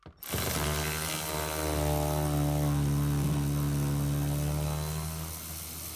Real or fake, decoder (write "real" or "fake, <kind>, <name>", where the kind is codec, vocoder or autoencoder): real